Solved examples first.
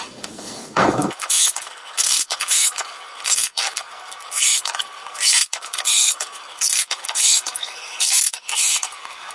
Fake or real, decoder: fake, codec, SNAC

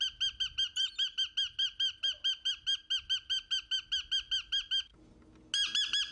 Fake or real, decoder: real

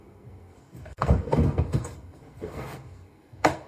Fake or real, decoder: fake, codec, SNAC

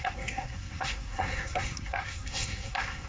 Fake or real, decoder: fake, codec, SNAC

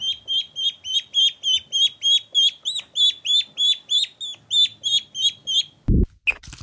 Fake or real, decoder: real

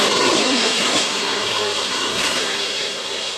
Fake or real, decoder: fake, codec, SNAC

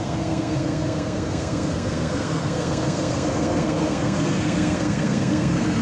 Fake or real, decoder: fake, codec, SNAC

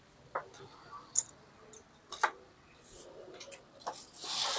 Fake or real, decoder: real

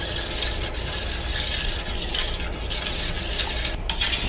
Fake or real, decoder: real